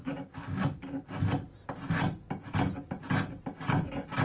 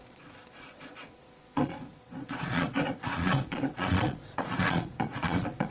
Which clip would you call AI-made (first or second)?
second